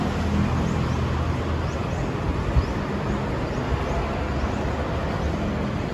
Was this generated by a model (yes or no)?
no